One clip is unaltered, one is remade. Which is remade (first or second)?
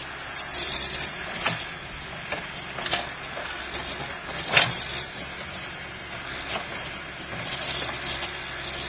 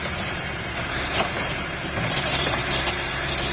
second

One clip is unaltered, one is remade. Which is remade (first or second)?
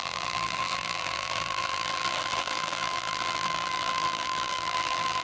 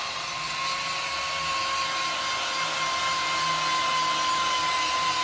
first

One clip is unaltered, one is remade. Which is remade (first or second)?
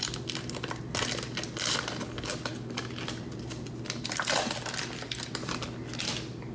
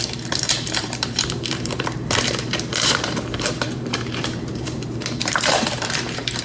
second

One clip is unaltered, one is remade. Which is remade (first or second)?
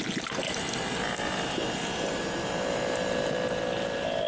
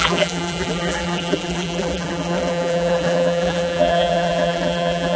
second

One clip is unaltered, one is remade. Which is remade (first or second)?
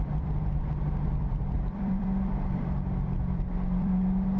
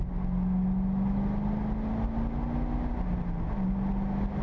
first